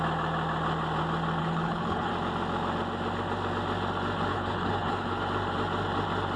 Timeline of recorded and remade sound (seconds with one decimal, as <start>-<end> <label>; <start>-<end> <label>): 0.0-1.4 recorded; 1.4-2.1 remade; 2.1-4.3 recorded; 4.3-5.2 remade; 5.2-6.4 recorded